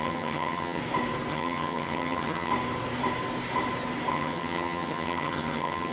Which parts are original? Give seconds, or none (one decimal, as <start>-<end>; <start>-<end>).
0.8-1.3; 2.5-4.1